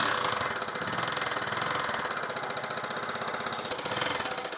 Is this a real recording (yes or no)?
yes